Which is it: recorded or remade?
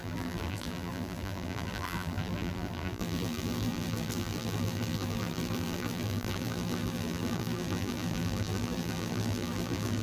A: remade